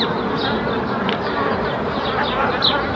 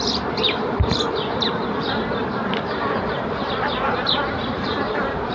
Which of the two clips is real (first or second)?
first